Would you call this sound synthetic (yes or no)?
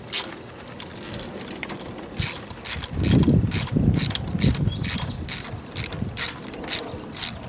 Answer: no